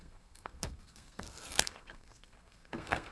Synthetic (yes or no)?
yes